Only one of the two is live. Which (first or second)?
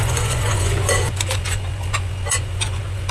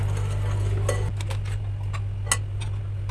second